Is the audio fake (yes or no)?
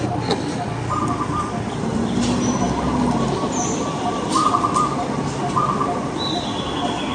no